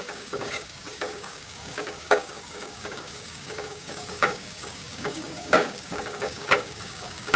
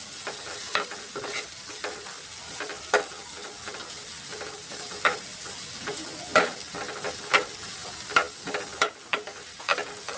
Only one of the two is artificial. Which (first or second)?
first